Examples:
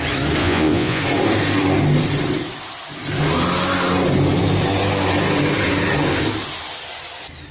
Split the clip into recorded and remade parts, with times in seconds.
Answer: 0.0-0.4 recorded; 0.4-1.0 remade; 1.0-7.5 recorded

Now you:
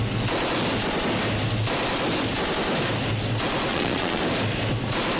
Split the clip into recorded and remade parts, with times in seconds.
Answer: 0.0-3.7 recorded; 3.7-4.2 remade; 4.2-5.2 recorded

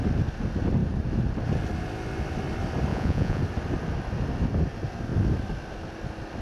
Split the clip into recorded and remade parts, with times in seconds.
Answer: 0.0-2.9 recorded; 2.9-3.4 remade; 3.4-6.4 recorded

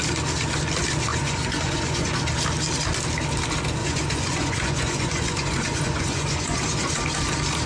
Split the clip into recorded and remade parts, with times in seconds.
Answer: 0.0-1.1 recorded; 1.1-2.1 remade; 2.1-3.8 recorded; 3.8-7.0 remade; 7.0-7.7 recorded

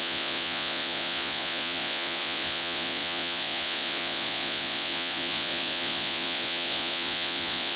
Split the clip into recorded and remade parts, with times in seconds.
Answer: 0.0-7.8 remade

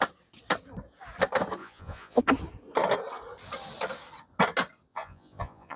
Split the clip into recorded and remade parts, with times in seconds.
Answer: 0.0-1.6 recorded; 1.6-2.2 remade; 2.2-4.9 recorded; 4.9-5.8 remade

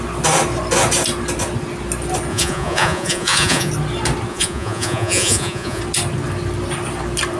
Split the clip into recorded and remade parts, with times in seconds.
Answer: 0.0-2.3 recorded; 2.3-3.7 remade; 3.7-4.3 recorded; 4.3-5.8 remade; 5.8-7.4 recorded